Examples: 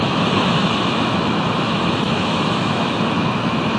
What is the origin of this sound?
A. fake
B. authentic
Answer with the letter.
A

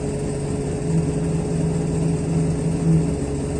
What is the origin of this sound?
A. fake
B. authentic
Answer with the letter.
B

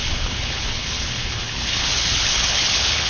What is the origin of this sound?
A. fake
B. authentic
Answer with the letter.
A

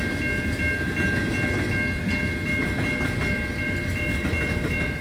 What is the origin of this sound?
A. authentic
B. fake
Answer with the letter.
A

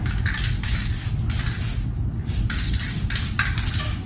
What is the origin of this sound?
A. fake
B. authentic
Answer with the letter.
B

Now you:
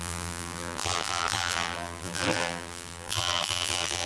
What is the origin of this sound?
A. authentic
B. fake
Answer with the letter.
B